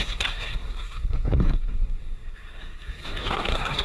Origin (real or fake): fake